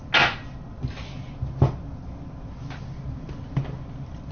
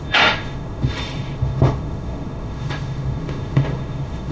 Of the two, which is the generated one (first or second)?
second